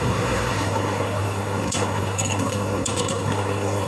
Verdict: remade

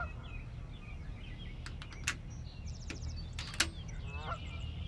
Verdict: recorded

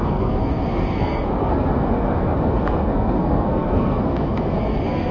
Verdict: remade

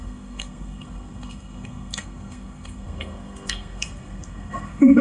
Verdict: remade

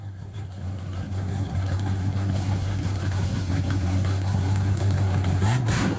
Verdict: remade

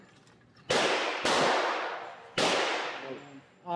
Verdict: recorded